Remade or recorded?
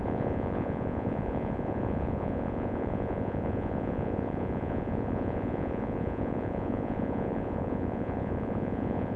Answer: remade